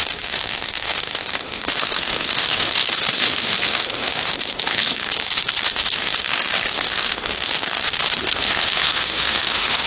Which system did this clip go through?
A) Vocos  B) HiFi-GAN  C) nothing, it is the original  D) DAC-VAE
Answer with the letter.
D